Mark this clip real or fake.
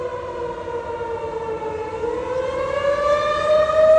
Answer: real